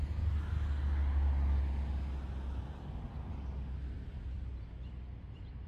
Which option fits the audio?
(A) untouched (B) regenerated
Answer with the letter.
A